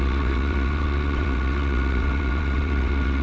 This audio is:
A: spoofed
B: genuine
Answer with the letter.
A